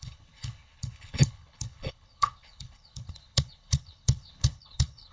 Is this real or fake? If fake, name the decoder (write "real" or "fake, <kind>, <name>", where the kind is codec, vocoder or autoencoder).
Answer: fake, codec, HILCodec